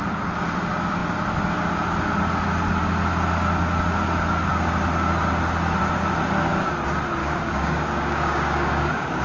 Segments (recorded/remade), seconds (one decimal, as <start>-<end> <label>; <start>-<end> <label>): 0.0-7.2 recorded; 7.2-9.2 remade

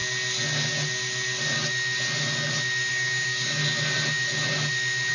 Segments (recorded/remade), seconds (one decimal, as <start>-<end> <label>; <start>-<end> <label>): 0.0-2.9 recorded; 2.9-3.6 remade; 3.6-5.1 recorded

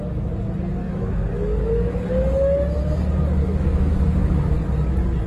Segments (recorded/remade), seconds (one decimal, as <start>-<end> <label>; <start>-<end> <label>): 0.0-0.8 recorded; 0.8-2.1 remade; 2.1-3.4 recorded; 3.4-4.5 remade; 4.5-5.3 recorded

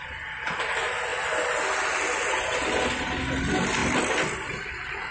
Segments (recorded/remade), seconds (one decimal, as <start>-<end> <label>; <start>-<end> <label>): 0.0-5.1 recorded

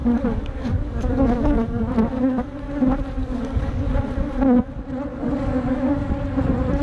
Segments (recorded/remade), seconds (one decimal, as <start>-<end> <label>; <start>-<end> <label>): 0.0-1.9 remade; 1.9-3.2 recorded; 3.2-3.8 remade; 3.8-5.1 recorded; 5.1-6.1 remade; 6.1-6.8 recorded

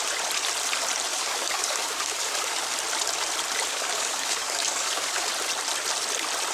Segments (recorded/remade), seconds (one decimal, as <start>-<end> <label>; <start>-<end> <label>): 0.0-1.1 recorded; 1.1-2.6 remade; 2.6-3.7 recorded; 3.7-5.3 remade; 5.3-6.5 recorded